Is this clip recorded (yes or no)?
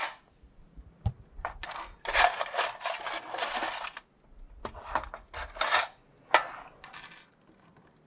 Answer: yes